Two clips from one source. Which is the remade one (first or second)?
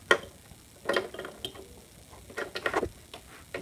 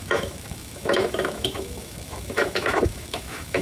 second